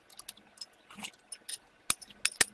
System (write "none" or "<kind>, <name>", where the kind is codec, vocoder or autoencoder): none